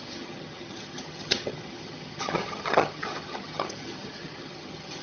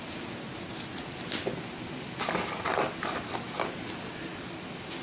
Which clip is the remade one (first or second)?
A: first